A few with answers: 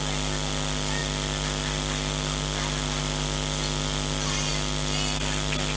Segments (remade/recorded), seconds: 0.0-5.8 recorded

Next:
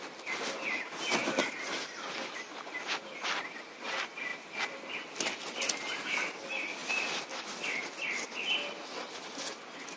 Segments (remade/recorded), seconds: 0.0-10.0 recorded